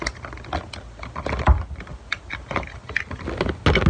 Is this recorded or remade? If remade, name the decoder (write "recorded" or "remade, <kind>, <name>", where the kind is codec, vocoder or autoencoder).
recorded